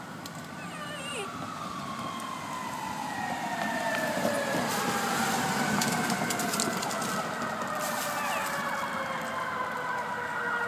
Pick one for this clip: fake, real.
real